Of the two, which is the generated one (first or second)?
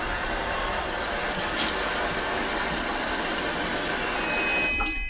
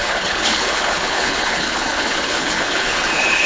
second